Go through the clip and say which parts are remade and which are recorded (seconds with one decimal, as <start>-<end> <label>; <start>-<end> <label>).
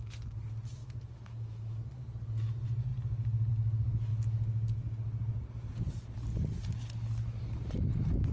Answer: 0.0-0.8 recorded; 0.8-1.9 remade; 1.9-8.3 recorded